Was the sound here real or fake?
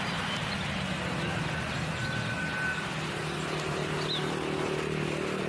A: real